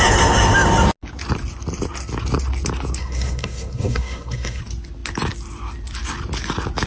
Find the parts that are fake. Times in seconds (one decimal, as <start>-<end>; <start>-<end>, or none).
3.0-4.6